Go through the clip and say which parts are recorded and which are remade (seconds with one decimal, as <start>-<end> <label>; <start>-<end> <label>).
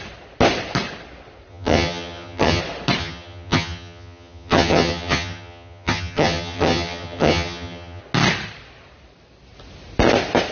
0.0-1.5 recorded; 1.5-2.6 remade; 2.6-3.0 recorded; 3.0-8.0 remade; 8.0-10.5 recorded